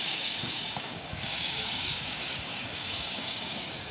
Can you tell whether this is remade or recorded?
remade